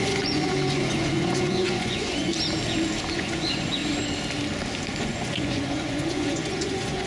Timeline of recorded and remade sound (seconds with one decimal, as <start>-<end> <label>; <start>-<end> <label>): 0.0-2.3 remade; 2.3-3.1 recorded; 3.1-3.8 remade; 3.8-5.0 recorded; 5.0-7.1 remade